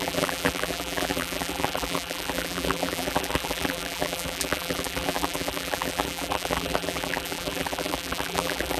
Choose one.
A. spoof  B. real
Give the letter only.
A